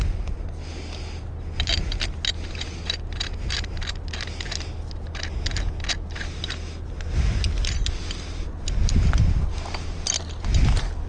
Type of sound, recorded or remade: recorded